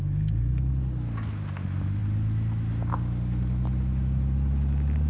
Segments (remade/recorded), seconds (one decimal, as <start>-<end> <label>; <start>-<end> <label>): 0.0-5.1 recorded